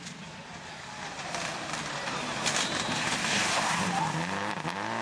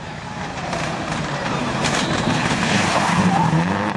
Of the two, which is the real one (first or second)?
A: first